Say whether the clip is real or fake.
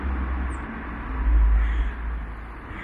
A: real